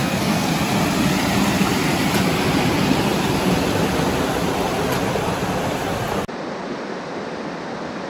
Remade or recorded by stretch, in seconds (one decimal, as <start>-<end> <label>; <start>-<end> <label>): 0.0-0.5 remade; 0.5-8.1 recorded